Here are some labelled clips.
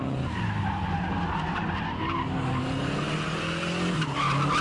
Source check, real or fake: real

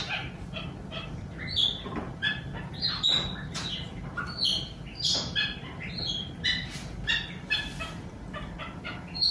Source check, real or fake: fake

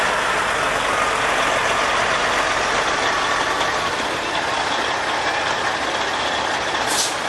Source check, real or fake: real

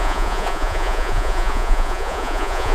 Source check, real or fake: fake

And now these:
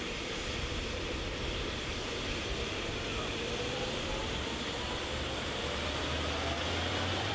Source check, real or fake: fake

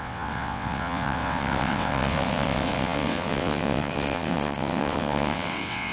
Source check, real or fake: fake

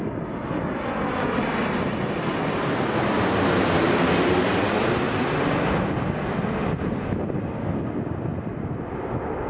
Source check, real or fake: real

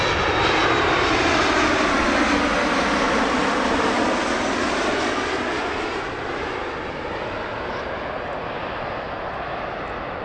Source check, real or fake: real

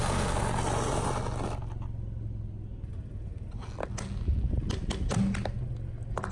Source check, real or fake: real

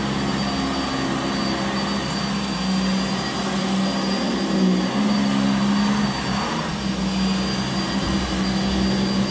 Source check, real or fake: real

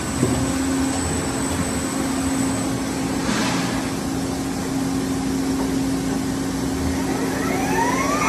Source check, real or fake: real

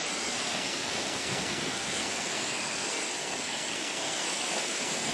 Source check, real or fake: fake